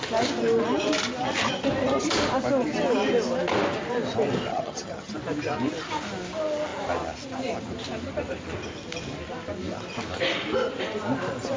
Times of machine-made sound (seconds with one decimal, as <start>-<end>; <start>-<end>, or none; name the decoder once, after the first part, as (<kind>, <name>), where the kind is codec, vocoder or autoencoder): 4.5-5.1 (vocoder, HiFi-GAN)